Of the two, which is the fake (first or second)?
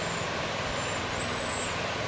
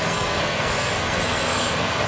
second